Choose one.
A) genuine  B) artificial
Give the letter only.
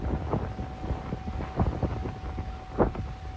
A